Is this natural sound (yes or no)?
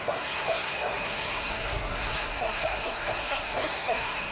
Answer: no